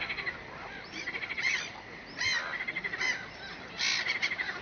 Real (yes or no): no